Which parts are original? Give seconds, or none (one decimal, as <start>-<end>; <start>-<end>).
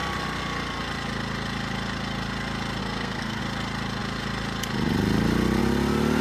0.0-2.8; 3.4-6.2